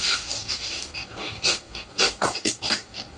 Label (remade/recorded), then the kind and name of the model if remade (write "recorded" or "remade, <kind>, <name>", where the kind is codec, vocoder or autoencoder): remade, codec, DAC